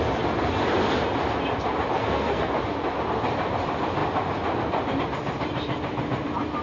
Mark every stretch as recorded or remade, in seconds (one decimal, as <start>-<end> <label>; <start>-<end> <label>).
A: 0.0-2.0 recorded; 2.0-2.5 remade; 2.5-6.6 recorded